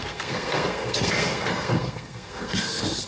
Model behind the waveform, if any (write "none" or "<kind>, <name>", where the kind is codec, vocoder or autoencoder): codec, SNAC